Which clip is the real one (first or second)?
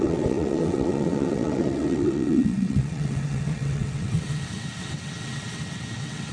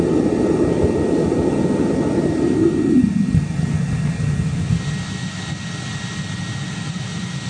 second